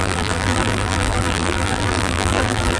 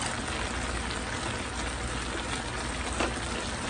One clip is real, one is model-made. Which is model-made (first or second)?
first